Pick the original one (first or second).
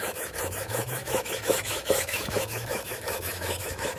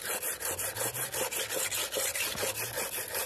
second